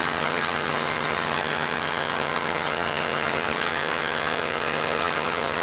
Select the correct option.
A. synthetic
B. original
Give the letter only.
A